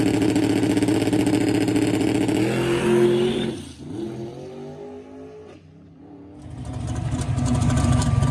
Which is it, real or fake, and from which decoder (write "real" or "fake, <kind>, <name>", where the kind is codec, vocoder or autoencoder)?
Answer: real